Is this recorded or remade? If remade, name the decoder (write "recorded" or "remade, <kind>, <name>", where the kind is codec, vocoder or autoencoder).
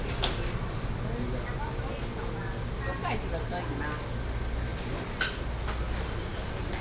recorded